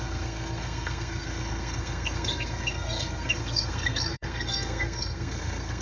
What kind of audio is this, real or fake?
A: fake